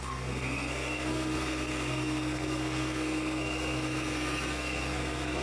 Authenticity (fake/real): fake